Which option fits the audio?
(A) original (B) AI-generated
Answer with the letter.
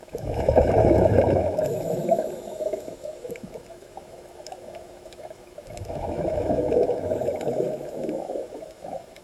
B